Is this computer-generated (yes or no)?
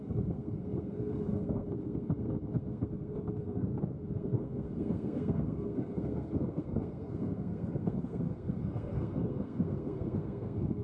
yes